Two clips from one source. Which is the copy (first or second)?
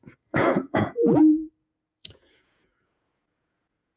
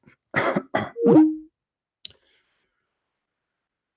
first